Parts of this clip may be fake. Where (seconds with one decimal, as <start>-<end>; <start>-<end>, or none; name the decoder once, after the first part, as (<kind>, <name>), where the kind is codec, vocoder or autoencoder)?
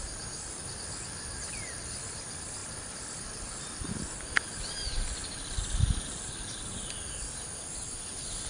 none